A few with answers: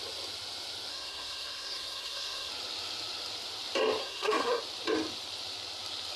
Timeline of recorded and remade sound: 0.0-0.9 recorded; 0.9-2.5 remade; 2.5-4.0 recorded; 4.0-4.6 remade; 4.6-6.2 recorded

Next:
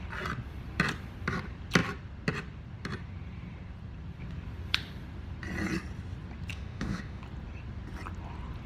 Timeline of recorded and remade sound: 0.0-6.5 recorded; 6.5-7.2 remade; 7.2-8.7 recorded

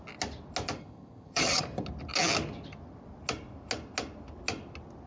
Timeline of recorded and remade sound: 0.0-0.8 recorded; 0.8-1.6 remade; 1.6-5.1 recorded

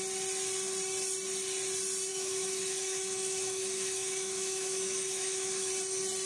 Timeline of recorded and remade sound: 0.0-2.1 recorded; 2.1-5.7 remade; 5.7-6.3 recorded

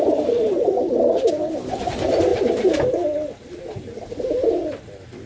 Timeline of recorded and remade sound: 0.0-5.3 remade